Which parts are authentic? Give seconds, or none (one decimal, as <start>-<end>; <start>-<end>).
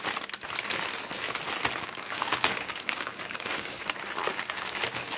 0.0-1.8; 3.8-4.3; 4.8-5.2